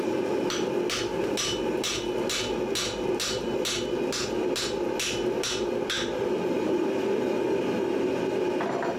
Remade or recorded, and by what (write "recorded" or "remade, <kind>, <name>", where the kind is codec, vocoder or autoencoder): recorded